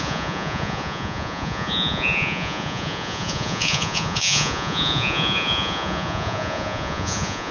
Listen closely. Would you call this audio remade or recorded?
remade